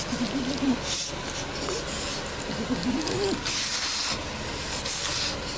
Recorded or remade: recorded